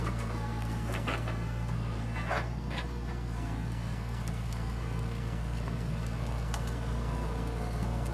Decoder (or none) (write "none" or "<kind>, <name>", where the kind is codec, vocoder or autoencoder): codec, SNAC